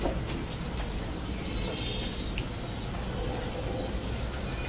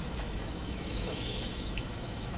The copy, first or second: second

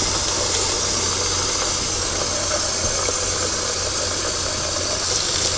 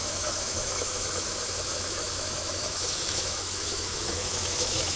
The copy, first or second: second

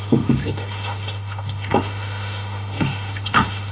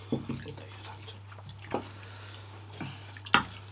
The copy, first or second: first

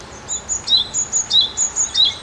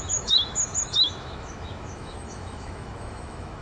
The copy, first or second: second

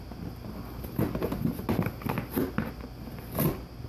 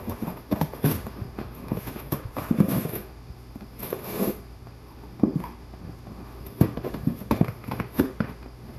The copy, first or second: second